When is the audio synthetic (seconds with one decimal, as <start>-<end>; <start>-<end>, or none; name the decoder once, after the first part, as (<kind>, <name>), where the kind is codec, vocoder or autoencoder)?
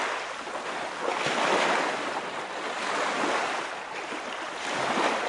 none